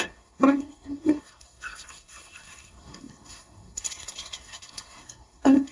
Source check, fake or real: fake